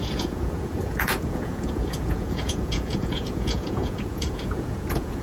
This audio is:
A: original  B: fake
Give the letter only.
B